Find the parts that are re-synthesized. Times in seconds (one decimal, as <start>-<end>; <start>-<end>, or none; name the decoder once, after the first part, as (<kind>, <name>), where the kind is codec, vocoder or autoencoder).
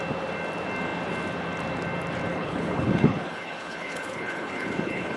2.3-5.2 (codec, HILCodec)